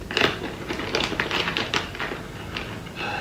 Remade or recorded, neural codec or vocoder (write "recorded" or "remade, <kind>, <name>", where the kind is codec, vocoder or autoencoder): recorded